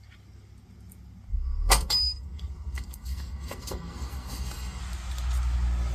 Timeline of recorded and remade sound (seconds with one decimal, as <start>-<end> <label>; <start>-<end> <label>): 0.0-1.3 recorded; 1.3-4.8 remade; 4.8-5.9 recorded